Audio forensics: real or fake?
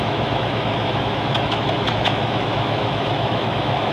fake